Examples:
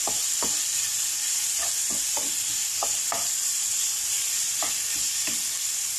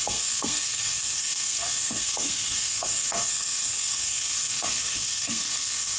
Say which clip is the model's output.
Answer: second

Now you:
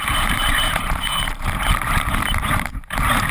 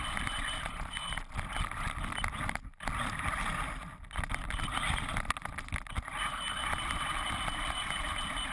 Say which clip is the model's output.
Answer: first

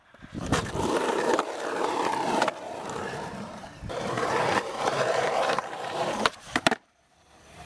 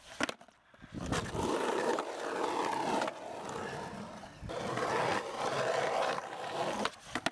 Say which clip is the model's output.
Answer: first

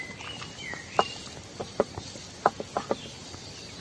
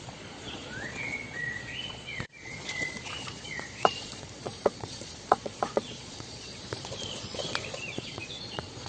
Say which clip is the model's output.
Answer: second